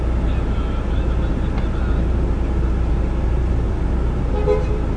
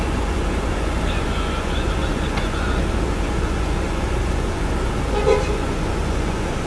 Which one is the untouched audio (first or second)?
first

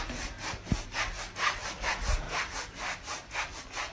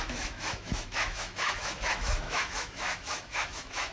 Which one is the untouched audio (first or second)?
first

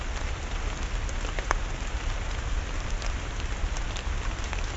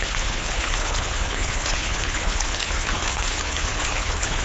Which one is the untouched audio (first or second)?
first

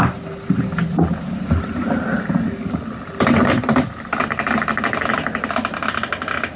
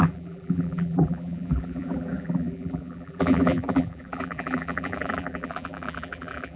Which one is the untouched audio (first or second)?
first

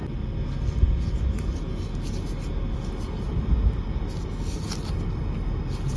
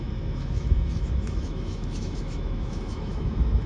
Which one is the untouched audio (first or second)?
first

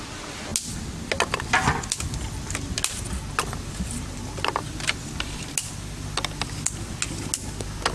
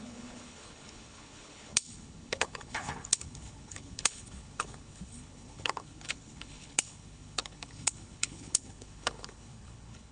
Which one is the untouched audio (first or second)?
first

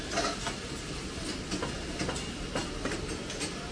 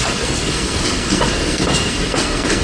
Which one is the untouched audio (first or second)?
first